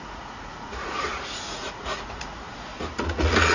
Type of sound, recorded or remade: remade